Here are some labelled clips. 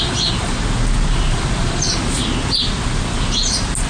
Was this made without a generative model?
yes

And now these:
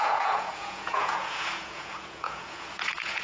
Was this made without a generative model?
no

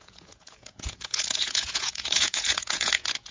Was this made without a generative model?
no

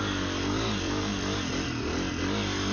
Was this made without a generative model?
yes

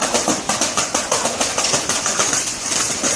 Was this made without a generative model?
no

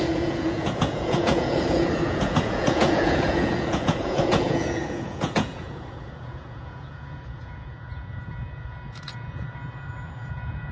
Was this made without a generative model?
no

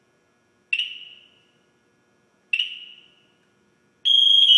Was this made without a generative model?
yes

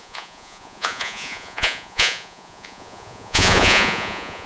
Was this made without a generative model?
no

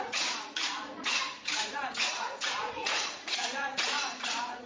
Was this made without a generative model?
no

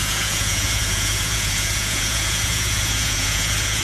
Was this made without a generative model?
no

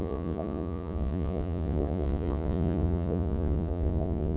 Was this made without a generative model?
no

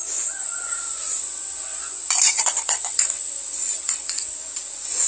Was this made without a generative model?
no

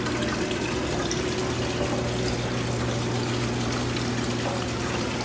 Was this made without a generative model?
yes